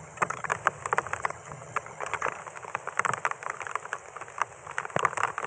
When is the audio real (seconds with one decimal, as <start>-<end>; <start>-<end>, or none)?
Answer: 0.5-1.2; 2.4-5.5